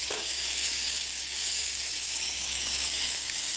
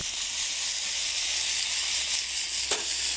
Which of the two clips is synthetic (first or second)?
first